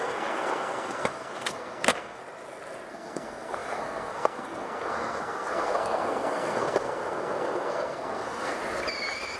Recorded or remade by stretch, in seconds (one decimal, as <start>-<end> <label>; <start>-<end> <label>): 0.0-2.2 remade; 2.2-2.9 recorded; 2.9-8.6 remade; 8.6-9.4 recorded